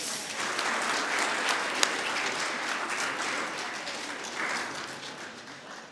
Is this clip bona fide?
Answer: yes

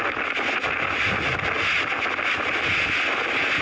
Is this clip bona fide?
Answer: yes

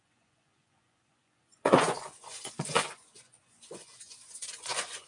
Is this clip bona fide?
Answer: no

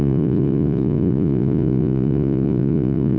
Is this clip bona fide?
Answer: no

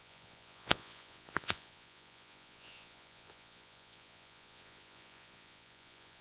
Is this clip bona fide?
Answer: no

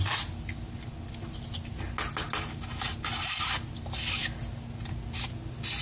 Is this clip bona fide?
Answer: yes